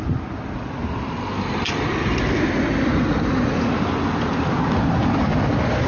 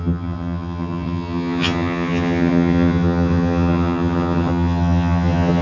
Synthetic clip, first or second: second